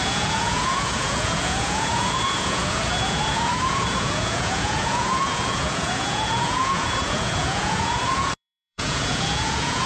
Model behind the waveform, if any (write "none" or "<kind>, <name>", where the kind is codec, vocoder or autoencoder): vocoder, Vocos